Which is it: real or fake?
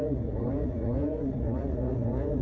fake